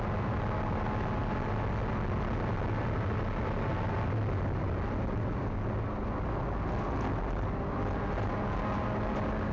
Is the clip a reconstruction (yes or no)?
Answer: no